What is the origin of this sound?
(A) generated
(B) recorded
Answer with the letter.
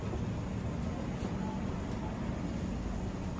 B